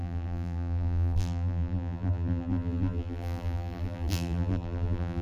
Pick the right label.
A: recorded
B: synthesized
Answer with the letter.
B